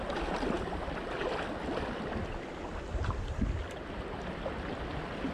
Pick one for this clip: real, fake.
real